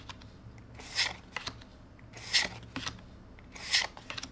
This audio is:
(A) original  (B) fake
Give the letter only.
A